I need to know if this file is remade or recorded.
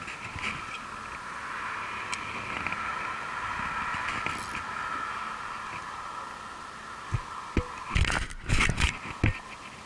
recorded